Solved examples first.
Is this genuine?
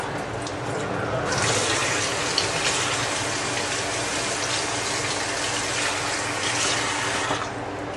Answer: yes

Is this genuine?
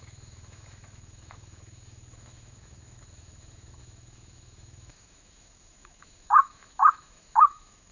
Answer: no